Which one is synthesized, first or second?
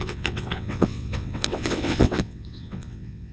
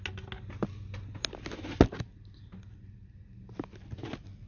first